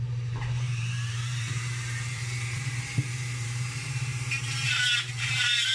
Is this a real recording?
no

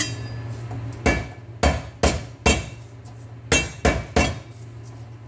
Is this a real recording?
yes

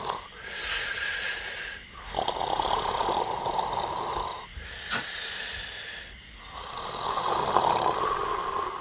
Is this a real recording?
yes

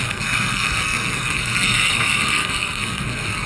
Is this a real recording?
no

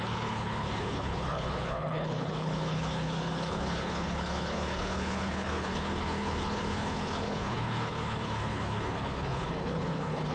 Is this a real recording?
no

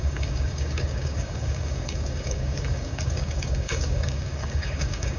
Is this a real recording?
no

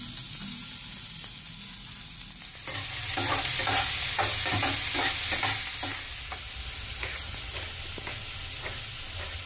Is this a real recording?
yes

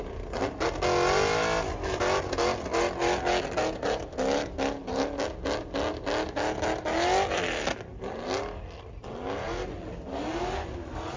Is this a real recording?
yes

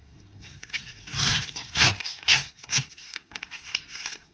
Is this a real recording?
no